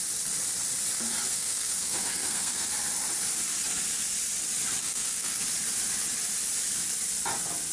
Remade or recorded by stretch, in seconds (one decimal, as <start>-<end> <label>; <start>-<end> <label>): 0.0-1.3 recorded; 1.3-2.7 remade; 2.7-4.8 recorded; 4.8-5.4 remade; 5.4-7.7 recorded